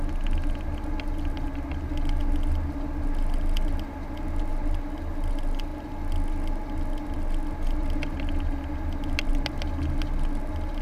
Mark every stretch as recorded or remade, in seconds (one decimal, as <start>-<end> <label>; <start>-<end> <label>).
0.0-10.8 recorded